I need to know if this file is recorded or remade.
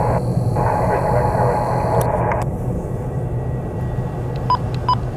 recorded